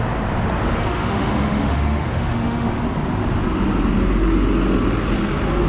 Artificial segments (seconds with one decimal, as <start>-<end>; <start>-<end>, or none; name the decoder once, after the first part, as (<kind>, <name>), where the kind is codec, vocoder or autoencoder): 0.7-2.8 (autoencoder, DAC-VAE)